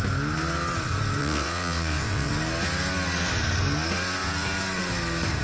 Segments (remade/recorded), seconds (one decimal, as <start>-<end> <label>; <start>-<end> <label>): 0.0-1.2 recorded; 1.2-2.3 remade; 2.3-5.4 recorded